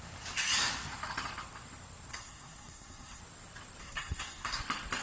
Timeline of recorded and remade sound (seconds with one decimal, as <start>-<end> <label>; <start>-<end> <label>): 0.0-2.1 recorded; 2.1-3.2 remade; 3.2-3.8 recorded; 3.8-4.6 remade; 4.6-5.0 recorded